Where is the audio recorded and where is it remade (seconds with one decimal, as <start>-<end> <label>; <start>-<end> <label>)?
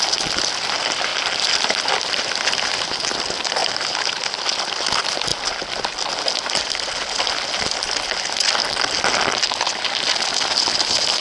0.0-1.1 recorded; 1.1-2.2 remade; 2.2-5.3 recorded; 5.3-6.1 remade; 6.1-8.6 recorded; 8.6-9.7 remade; 9.7-11.2 recorded